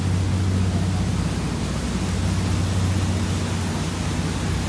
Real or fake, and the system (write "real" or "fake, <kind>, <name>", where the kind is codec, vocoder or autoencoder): real